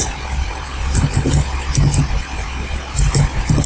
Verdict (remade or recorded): recorded